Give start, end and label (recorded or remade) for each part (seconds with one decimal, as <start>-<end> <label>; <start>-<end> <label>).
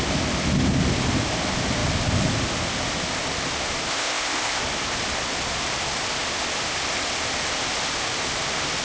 0.0-3.9 recorded; 3.9-4.6 remade; 4.6-8.8 recorded